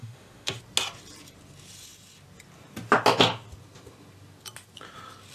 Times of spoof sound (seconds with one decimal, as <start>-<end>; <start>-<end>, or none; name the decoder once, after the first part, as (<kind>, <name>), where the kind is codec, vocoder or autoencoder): 0.0-0.6 (autoencoder, DAC-VAE)